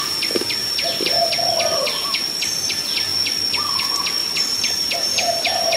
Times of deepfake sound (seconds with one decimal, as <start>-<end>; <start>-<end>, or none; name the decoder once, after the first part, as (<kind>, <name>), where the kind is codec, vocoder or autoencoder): 0.6-1.3 (vocoder, BigVGAN v2); 4.2-5.8